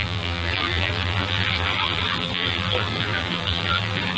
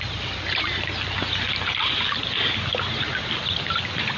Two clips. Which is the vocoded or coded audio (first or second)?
first